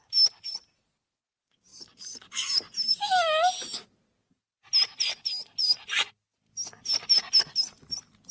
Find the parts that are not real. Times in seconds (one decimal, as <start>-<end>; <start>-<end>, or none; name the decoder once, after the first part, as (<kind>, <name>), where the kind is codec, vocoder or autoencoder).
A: none